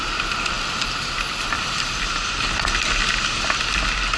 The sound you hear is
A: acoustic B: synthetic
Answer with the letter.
A